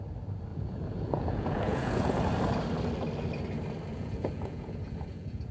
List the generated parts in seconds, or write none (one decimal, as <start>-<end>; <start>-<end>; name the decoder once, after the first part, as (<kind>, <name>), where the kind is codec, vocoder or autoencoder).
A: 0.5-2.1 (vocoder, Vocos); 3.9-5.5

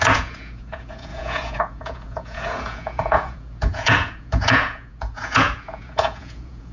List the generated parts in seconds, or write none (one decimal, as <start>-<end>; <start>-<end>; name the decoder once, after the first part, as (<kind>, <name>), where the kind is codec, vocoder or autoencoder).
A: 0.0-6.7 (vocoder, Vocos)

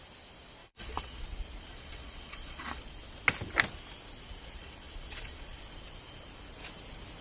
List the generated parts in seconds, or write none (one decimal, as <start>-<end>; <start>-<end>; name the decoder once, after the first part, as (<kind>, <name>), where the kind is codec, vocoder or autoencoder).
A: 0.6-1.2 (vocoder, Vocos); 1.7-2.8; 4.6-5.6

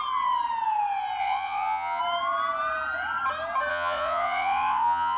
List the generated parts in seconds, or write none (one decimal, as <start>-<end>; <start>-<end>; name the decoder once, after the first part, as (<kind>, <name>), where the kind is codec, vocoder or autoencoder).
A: 1.2-2.0 (vocoder, Vocos); 3.7-5.2